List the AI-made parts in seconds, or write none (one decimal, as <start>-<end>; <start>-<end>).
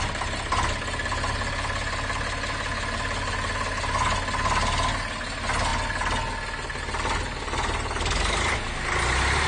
none